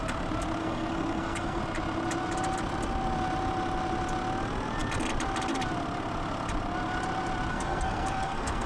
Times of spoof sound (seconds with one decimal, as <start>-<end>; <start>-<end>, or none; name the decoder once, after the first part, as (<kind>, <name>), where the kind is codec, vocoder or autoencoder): 0.6-1.6 (codec, SNAC); 7.5-8.7

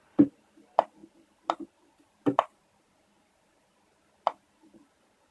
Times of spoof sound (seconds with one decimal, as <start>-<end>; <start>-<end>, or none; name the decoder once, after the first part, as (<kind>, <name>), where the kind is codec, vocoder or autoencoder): none

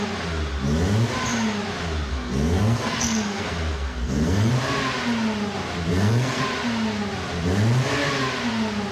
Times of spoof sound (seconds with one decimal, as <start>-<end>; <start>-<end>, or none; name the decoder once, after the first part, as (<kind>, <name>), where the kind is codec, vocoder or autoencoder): 2.1-4.5 (codec, SNAC); 5.9-6.4

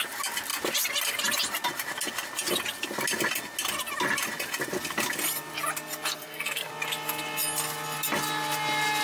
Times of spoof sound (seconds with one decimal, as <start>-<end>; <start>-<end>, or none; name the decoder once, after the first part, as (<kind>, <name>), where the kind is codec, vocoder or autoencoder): 6.1-6.7 (codec, SNAC)

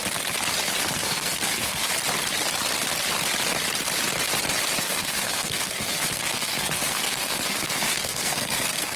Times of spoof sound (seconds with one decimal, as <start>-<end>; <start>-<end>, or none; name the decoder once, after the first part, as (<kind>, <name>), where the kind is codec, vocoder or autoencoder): 0.9-1.9 (codec, SNAC); 4.8-9.0

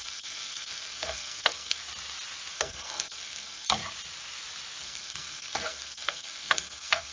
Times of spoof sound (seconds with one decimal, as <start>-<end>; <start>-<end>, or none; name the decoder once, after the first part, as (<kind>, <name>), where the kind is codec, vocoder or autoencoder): 0.0-1.8 (codec, SNAC); 2.5-3.8; 4.8-7.1